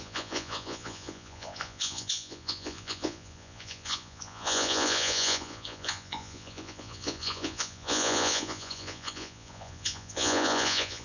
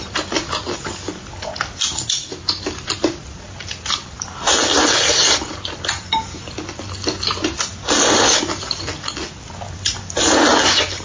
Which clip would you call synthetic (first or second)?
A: first